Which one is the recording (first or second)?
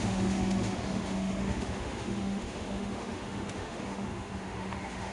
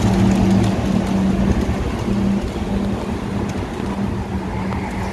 second